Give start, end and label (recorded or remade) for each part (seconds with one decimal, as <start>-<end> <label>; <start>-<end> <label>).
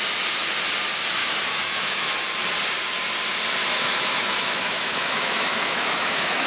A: 0.0-1.2 recorded; 1.2-2.1 remade; 2.1-3.6 recorded; 3.6-6.5 remade